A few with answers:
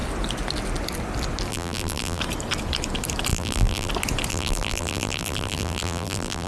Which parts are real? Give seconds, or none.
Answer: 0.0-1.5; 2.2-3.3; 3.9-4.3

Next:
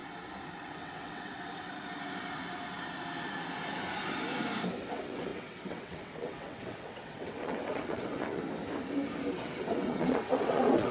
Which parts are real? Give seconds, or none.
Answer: 0.0-0.6; 1.5-4.8; 8.4-9.3

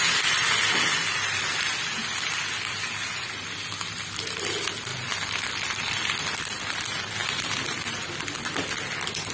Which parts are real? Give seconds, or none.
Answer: 0.0-9.3

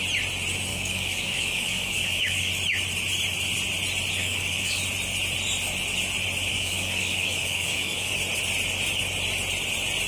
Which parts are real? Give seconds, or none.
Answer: 0.0-0.7; 2.5-4.2; 4.8-6.5; 8.1-10.1

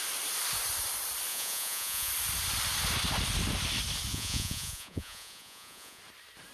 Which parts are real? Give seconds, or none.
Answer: 0.0-1.3; 2.1-4.1; 6.0-6.5

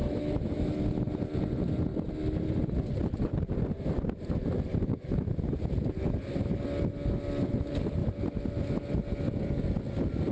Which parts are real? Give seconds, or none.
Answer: 1.1-4.7; 5.3-10.3

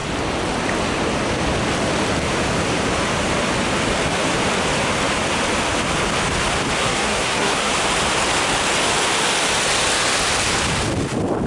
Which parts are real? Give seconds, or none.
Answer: 0.0-6.8; 7.7-11.5

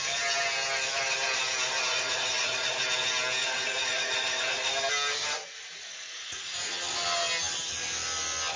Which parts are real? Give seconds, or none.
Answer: 0.0-1.9; 2.9-3.4; 4.7-5.4; 6.7-8.6